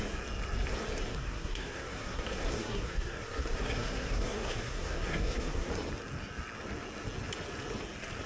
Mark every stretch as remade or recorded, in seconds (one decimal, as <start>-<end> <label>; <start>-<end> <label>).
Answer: 0.0-1.1 recorded; 1.1-5.7 remade; 5.7-8.3 recorded